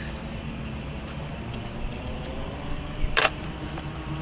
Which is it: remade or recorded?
remade